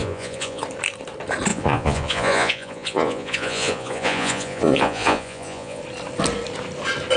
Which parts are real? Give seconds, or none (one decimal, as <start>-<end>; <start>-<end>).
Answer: 0.6-1.5; 5.8-7.2